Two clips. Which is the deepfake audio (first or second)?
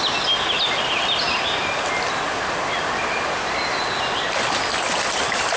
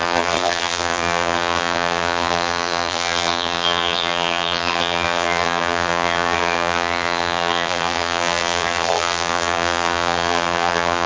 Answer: second